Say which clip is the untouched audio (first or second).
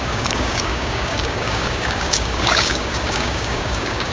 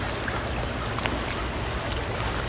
second